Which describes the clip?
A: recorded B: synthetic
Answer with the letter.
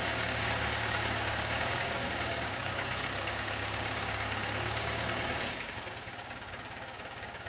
B